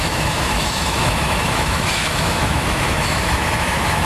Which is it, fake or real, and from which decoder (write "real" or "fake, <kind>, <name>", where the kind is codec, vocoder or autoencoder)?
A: fake, autoencoder, DAC-VAE